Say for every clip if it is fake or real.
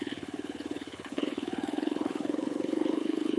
fake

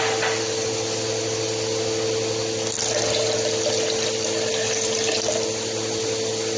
real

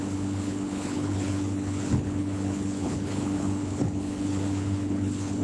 fake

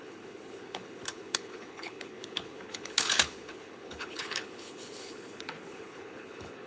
fake